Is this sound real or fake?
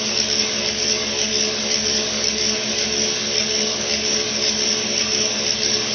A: fake